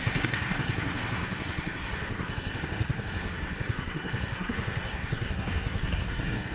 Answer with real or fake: fake